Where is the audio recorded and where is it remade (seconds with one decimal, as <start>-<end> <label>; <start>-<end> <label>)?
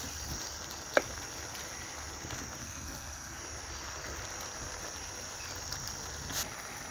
0.0-2.6 recorded; 2.6-3.4 remade; 3.4-6.9 recorded